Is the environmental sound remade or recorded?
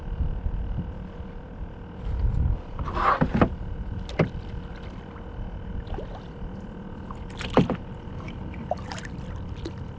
recorded